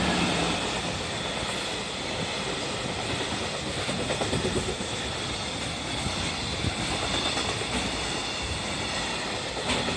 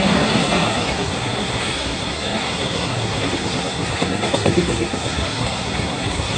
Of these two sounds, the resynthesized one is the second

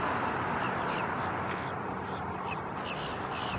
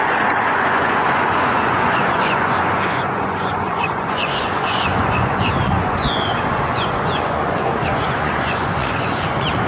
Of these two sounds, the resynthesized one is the second